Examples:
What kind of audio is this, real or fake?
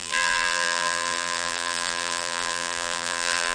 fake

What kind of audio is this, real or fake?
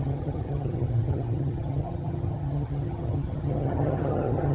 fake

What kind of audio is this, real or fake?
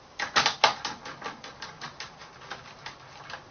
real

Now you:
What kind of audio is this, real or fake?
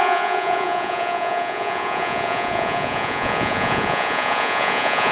fake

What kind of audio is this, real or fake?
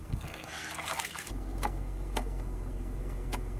fake